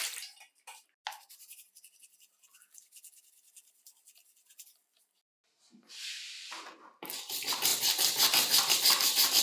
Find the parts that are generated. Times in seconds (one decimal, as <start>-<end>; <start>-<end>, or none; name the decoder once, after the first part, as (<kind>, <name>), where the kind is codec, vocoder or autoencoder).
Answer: none

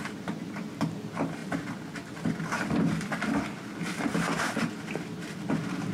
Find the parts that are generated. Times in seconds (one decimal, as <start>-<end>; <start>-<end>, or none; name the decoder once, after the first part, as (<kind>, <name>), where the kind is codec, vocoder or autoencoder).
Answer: 4.1-4.7 (vocoder, BigVGAN v2)

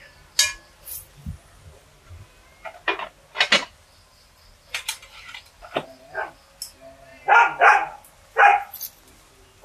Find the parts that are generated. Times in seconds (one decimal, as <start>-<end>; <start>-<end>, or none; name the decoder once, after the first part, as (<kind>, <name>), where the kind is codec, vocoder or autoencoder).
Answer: 4.1-6.3 (vocoder, BigVGAN v2)

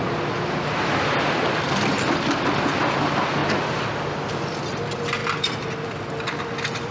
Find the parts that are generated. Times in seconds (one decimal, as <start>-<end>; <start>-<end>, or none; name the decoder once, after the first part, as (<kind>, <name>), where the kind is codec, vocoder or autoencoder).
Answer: 0.0-3.4 (vocoder, BigVGAN v2); 4.3-6.9

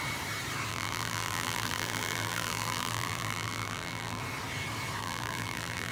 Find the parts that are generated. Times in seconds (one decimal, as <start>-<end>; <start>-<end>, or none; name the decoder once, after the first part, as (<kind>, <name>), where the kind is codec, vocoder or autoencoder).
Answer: 0.7-4.2 (vocoder, BigVGAN v2); 5.0-5.9